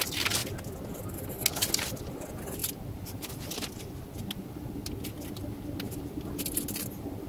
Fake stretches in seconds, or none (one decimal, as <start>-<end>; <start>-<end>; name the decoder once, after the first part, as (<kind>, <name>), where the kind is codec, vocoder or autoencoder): none